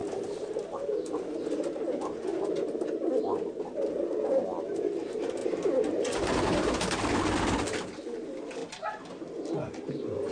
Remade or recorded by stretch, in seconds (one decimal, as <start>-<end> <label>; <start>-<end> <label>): 0.0-10.3 recorded